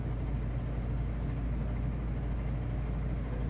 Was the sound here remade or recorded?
recorded